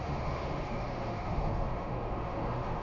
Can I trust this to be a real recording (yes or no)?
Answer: no